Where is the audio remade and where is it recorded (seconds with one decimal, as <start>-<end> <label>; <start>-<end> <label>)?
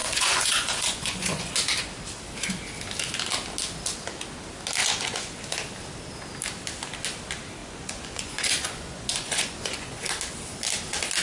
0.0-1.5 remade; 1.5-4.8 recorded; 4.8-5.4 remade; 5.4-7.6 recorded; 7.6-10.0 remade; 10.0-11.2 recorded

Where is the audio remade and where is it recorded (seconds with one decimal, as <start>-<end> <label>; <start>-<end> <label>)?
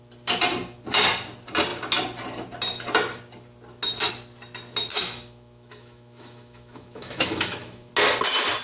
0.0-4.9 recorded; 4.9-7.9 remade; 7.9-8.6 recorded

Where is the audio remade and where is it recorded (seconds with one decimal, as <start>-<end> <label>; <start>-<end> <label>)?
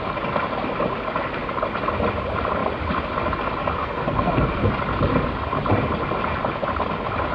0.0-3.8 recorded; 3.8-4.7 remade; 4.7-7.3 recorded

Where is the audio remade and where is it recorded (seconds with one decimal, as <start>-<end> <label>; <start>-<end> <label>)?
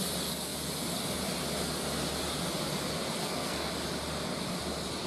0.0-3.2 recorded; 3.2-3.7 remade; 3.7-5.1 recorded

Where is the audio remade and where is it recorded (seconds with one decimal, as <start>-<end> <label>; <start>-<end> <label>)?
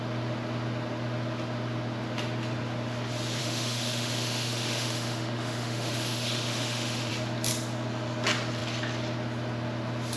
0.0-3.4 recorded; 3.4-7.1 remade; 7.1-10.2 recorded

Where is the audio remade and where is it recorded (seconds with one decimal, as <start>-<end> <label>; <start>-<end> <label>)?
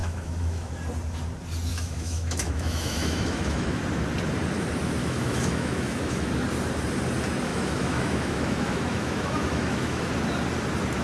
0.0-0.7 remade; 0.7-1.7 recorded; 1.7-3.8 remade; 3.8-5.0 recorded; 5.0-6.3 remade; 6.3-7.5 recorded; 7.5-10.1 remade; 10.1-11.0 recorded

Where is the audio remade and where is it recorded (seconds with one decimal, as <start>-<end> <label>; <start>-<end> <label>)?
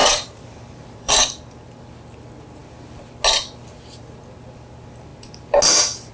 0.0-1.1 remade; 1.1-6.1 recorded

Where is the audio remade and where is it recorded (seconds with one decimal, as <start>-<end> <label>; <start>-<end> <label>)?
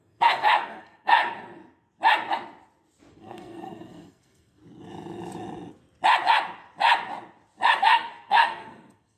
0.0-1.2 remade; 1.2-3.1 recorded; 3.1-4.6 remade; 4.6-7.8 recorded; 7.8-9.2 remade